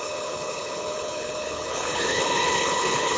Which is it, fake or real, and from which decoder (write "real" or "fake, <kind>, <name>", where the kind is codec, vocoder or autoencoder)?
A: fake, codec, HILCodec